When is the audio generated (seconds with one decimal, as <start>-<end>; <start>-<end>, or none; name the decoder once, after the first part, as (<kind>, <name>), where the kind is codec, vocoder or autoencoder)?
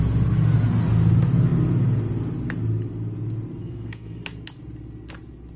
3.6-4.2 (codec, SNAC)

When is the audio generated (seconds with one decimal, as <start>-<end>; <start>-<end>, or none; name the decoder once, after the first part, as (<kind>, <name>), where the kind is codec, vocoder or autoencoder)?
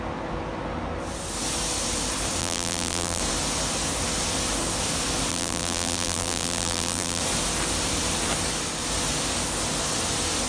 2.4-3.2 (vocoder, BigVGAN v2); 5.3-7.2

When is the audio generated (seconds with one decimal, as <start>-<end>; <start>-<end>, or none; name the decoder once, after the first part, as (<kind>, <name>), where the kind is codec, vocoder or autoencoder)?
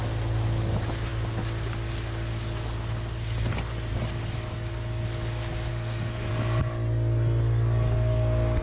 5.7-6.3 (codec, SNAC)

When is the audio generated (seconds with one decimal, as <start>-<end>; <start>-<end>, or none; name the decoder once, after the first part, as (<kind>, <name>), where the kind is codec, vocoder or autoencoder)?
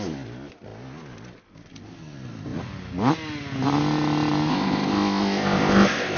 4.5-6.2 (codec, ZipCodec)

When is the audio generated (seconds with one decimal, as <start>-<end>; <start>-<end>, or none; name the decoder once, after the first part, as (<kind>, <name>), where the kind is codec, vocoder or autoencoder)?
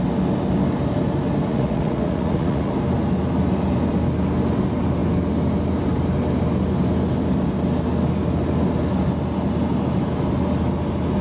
1.5-2.7 (vocoder, Vocos)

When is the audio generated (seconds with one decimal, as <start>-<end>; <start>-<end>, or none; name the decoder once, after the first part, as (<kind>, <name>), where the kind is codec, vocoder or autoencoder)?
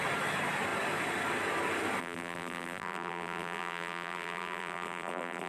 2.0-5.5 (vocoder, BigVGAN v2)